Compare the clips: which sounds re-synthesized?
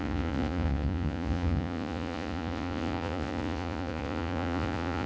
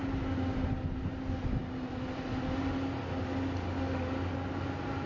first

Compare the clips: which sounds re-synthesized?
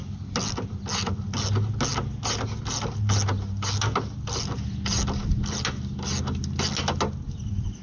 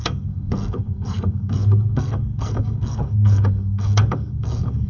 second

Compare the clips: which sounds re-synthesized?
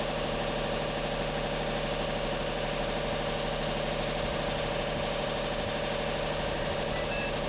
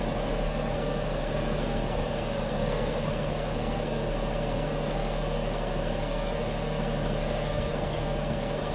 second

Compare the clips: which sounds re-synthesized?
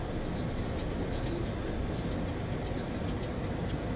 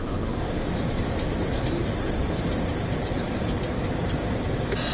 second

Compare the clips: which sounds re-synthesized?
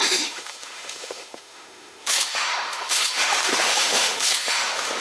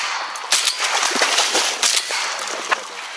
first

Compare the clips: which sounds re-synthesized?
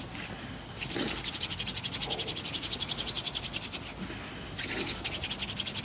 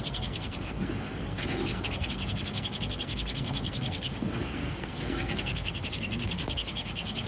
second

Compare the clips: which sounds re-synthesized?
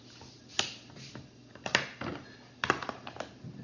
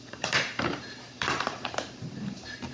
second